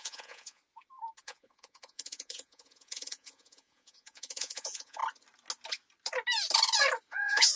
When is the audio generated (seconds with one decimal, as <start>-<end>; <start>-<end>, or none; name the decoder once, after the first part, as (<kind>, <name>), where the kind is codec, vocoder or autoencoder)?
0.0-0.6 (vocoder, Vocos); 1.2-5.0; 7.1-7.6